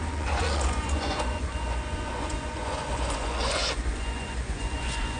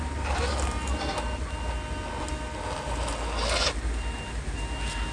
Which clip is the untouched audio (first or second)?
second